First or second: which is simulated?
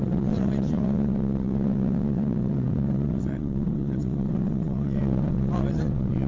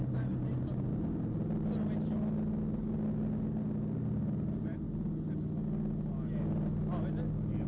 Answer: first